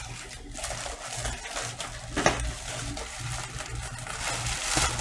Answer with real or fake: real